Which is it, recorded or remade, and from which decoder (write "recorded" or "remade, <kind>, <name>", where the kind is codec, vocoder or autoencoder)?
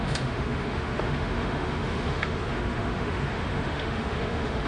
remade, autoencoder, DAC-VAE